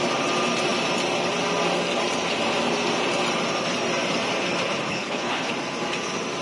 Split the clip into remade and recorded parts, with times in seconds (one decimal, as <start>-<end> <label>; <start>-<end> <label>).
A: 0.0-4.9 recorded; 4.9-5.5 remade; 5.5-6.4 recorded